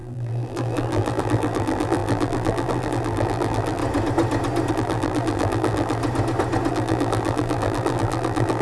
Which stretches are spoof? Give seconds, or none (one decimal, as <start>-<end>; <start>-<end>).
0.0-3.8; 4.7-6.0; 6.7-8.6